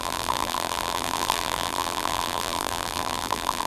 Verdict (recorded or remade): remade